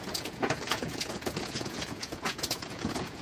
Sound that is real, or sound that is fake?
fake